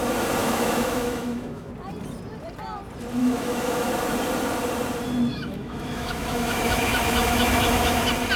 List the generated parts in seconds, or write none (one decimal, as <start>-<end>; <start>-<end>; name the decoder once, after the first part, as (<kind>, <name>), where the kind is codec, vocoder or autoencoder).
0.4-1.7 (autoencoder, DAC-VAE); 3.2-3.9; 5.3-8.0